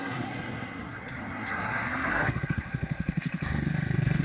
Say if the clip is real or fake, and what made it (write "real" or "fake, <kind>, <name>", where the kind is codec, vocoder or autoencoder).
fake, codec, SNAC